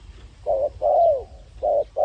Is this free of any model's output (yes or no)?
yes